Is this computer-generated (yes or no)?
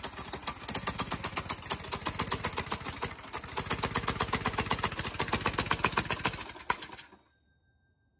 no